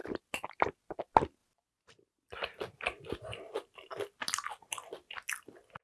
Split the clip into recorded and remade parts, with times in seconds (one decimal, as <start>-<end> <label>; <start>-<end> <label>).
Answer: 0.0-5.8 recorded